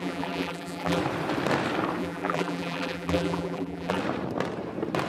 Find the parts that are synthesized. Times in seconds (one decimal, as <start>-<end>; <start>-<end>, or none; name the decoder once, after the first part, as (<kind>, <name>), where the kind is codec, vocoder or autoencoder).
0.0-1.0 (vocoder, BigVGAN v2); 2.0-4.0